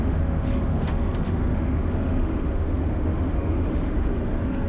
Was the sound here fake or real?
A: fake